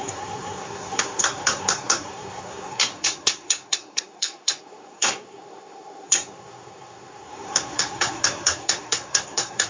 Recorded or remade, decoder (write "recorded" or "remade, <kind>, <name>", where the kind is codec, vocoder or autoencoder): remade, codec, SNAC